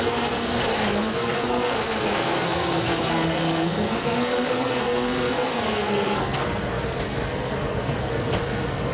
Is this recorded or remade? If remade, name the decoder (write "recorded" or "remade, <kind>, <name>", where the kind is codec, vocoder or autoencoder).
remade, codec, SNAC